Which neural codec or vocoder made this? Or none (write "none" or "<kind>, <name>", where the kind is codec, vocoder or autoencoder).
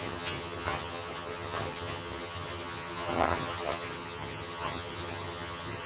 vocoder, HiFi-GAN